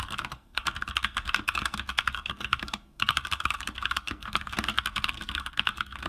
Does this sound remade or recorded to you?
remade